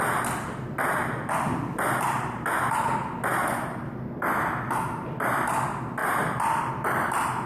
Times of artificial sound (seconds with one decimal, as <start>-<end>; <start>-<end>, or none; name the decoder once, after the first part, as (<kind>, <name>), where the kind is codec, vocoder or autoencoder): 6.0-6.7 (vocoder, BigVGAN v2)

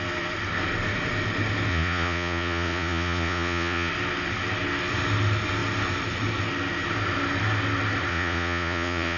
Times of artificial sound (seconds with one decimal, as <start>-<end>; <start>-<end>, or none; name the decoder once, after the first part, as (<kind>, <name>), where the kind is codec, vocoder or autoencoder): 1.7-3.9 (vocoder, Vocos); 8.1-9.2

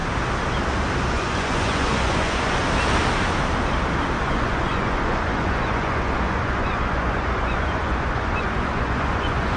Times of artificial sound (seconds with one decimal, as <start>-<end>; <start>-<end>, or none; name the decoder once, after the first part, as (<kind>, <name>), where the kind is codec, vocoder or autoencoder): 1.1-2.6 (vocoder, Vocos); 4.2-9.6